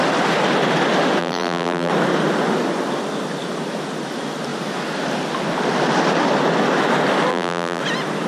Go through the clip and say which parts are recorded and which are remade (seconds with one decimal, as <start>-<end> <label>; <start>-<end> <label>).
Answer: 0.0-1.2 recorded; 1.2-1.9 remade; 1.9-7.3 recorded; 7.3-7.8 remade; 7.8-8.3 recorded